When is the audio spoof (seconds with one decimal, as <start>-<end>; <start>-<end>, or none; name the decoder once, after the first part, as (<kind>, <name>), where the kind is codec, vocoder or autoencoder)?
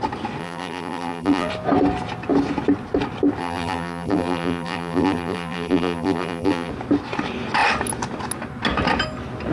0.4-1.5 (vocoder, BigVGAN v2); 3.4-6.7